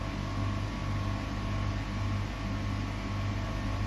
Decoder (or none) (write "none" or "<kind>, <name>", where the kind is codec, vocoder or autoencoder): none